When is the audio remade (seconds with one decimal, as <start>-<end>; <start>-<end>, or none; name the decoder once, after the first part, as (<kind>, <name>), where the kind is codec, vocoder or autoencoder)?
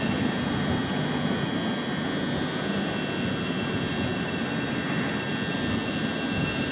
4.1-5.3 (vocoder, BigVGAN v2)